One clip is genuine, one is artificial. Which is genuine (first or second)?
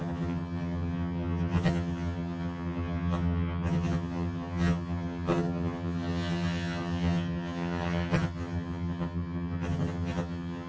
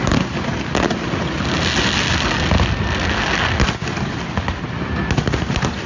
second